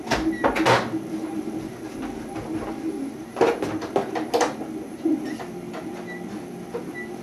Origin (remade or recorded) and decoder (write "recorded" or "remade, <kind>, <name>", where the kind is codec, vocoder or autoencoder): recorded